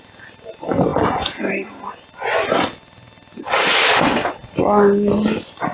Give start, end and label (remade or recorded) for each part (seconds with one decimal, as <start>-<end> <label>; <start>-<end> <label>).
0.0-5.7 recorded